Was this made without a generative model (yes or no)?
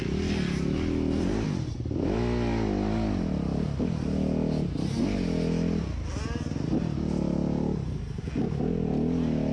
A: yes